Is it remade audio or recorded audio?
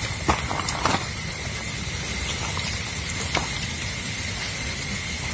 recorded